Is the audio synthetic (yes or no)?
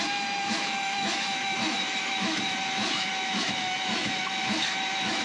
yes